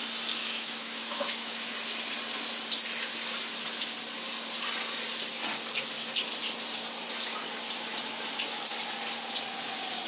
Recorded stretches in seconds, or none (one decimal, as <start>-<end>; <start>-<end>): 0.0-0.4; 1.7-10.1